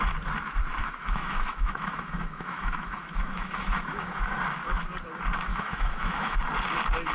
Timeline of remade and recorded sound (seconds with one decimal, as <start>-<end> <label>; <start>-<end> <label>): 0.0-0.8 recorded; 0.8-4.4 remade; 4.4-5.5 recorded; 5.5-6.4 remade; 6.4-7.1 recorded